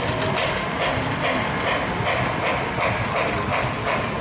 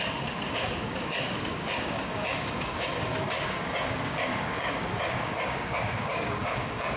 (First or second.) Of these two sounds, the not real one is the second